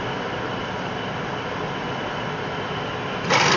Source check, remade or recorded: recorded